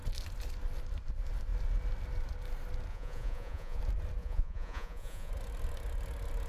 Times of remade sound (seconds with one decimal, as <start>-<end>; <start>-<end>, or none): 2.9-3.8; 4.2-5.3